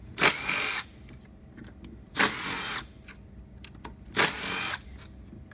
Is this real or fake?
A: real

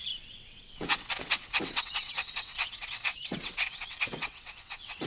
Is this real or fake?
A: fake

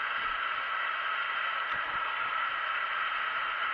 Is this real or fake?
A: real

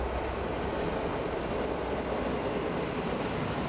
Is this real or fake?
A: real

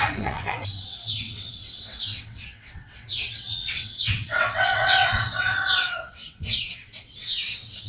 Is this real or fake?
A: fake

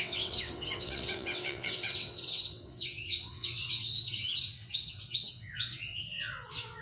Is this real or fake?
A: fake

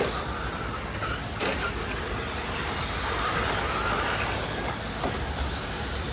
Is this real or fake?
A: real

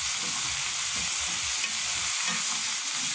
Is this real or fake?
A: real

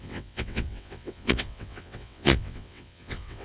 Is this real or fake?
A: fake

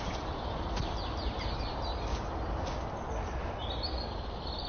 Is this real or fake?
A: real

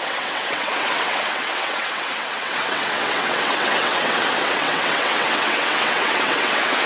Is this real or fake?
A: fake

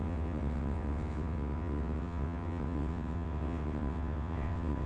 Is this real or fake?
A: fake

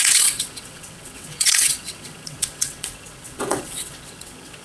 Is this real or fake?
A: fake